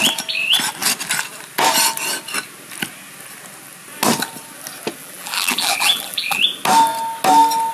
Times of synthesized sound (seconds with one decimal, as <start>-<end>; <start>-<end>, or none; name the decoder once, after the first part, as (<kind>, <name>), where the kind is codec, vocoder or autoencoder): 5.0-6.4 (vocoder, BigVGAN v2)